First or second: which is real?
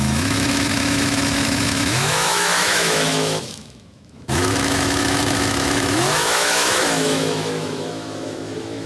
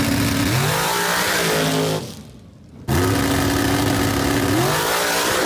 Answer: second